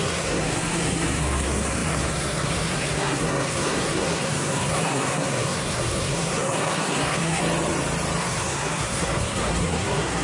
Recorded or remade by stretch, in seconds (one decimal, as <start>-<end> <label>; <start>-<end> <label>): 0.0-7.4 remade; 7.4-8.2 recorded; 8.2-10.2 remade